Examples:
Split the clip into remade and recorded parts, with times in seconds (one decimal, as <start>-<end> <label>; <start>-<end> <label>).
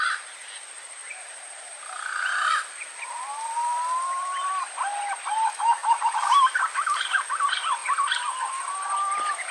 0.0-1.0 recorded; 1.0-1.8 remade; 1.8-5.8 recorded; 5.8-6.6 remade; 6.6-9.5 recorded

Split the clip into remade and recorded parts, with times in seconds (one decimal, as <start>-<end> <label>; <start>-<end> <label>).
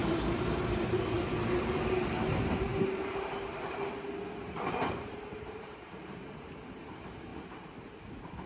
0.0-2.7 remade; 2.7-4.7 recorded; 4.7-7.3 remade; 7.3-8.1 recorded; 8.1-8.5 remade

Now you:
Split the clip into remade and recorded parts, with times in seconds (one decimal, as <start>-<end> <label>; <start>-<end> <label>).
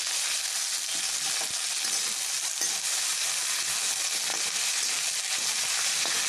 0.0-3.1 recorded; 3.1-3.6 remade; 3.6-4.3 recorded; 4.3-6.3 remade